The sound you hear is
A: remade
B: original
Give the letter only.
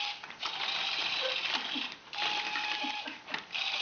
B